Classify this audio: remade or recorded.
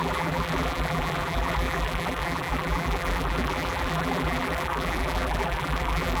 remade